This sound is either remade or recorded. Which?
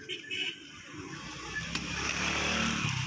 remade